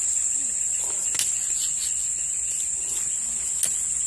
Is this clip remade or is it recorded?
recorded